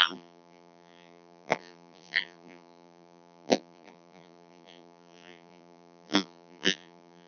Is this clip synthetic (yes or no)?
yes